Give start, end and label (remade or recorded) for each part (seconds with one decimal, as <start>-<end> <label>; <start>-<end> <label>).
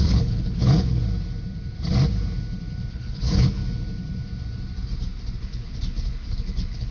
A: 0.0-1.0 remade; 1.0-2.9 recorded; 2.9-3.6 remade; 3.6-5.4 recorded; 5.4-6.9 remade